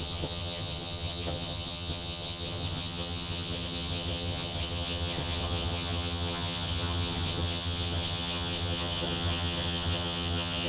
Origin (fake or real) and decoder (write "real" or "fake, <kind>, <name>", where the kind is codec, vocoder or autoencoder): fake, vocoder, HiFi-GAN